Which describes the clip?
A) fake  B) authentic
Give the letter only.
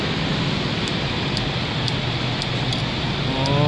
B